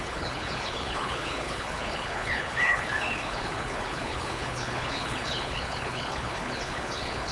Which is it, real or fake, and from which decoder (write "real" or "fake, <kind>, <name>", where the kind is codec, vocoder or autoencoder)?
fake, codec, HILCodec